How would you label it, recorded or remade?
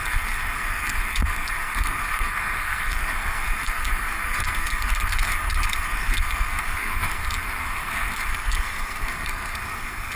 remade